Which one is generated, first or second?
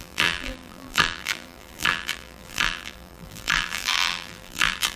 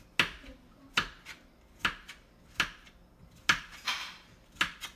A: first